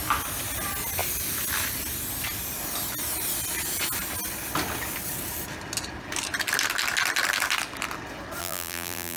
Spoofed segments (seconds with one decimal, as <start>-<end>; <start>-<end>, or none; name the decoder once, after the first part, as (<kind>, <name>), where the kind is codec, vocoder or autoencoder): 8.4-9.2 (vocoder, BigVGAN v2)